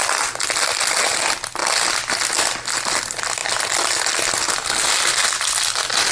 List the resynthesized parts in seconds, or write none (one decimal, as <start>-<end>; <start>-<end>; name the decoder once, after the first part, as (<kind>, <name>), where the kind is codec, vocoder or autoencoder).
none